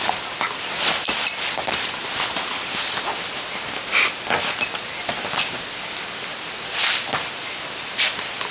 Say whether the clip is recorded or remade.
remade